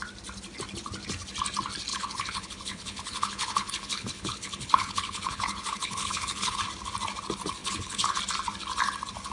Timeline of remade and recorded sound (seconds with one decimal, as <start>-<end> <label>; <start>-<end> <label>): 0.0-1.9 recorded; 1.9-6.6 remade; 6.6-7.6 recorded; 7.6-8.2 remade; 8.2-9.3 recorded